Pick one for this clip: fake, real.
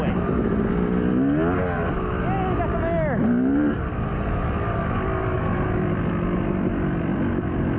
real